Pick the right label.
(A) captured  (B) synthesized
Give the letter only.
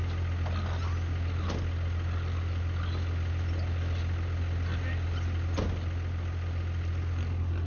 A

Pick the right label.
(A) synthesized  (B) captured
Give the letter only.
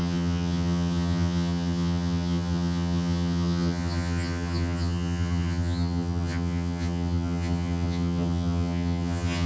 A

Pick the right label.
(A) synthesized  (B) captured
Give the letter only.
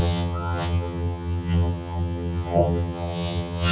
A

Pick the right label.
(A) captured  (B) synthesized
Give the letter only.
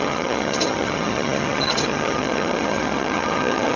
B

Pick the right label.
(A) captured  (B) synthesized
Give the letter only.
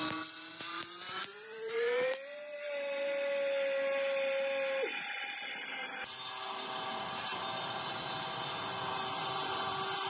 A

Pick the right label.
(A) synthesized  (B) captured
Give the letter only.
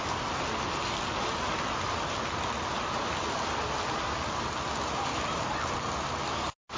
B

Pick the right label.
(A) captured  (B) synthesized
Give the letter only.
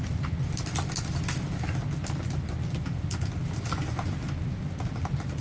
A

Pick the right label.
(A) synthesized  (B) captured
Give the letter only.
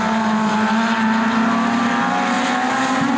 B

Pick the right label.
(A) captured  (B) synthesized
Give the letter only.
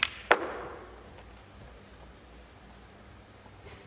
A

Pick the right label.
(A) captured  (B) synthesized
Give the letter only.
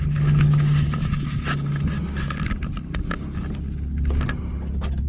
A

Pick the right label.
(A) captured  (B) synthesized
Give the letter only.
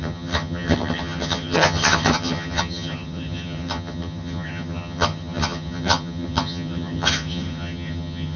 B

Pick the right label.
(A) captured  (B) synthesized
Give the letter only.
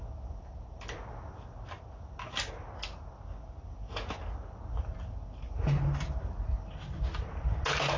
A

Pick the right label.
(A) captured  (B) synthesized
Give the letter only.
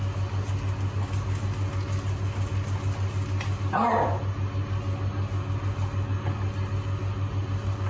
A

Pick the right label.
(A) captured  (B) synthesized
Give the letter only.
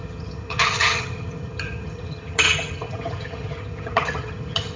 B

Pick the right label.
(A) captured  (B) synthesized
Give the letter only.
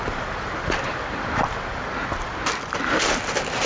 A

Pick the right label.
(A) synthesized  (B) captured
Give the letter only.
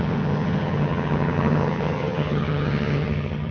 A